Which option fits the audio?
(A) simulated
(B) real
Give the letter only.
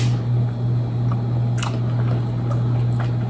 B